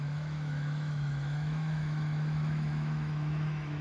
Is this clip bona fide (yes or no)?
no